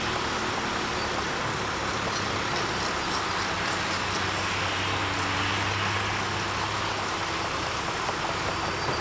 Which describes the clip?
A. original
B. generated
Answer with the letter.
A